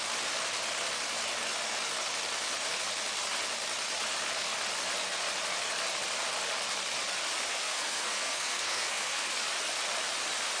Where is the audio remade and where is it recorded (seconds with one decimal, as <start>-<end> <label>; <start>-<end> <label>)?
0.0-7.5 recorded; 7.5-9.3 remade; 9.3-10.6 recorded